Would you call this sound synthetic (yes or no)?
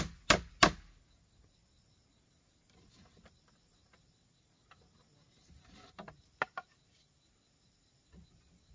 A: no